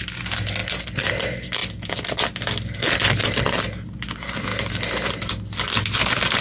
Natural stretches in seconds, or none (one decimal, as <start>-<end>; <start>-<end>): 0.0-6.4